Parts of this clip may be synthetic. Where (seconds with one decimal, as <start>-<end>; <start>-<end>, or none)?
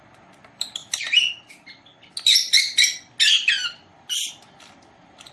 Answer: 0.0-0.8; 1.5-1.9; 3.3-5.3